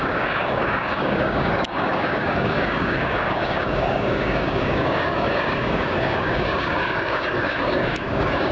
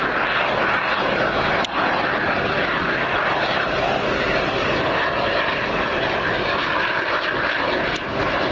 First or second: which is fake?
first